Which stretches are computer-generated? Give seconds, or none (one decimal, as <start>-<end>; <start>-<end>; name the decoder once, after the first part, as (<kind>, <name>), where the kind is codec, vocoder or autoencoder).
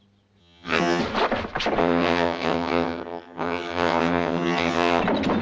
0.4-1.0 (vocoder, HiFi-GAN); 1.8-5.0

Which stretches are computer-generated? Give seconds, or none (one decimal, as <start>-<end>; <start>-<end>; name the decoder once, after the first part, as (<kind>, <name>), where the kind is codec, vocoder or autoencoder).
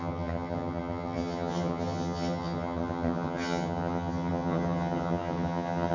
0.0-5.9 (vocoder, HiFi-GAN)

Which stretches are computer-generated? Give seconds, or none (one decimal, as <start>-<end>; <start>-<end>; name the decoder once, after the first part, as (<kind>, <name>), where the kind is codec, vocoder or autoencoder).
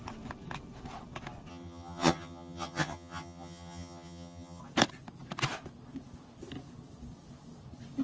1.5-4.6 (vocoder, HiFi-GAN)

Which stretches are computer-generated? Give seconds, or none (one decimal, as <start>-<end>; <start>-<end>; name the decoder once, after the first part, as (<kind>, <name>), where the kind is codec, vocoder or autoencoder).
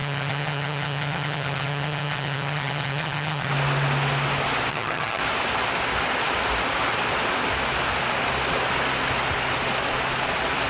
0.0-3.5 (vocoder, HiFi-GAN); 4.7-5.2